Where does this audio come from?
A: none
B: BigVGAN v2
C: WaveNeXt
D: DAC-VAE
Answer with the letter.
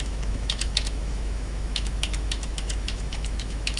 D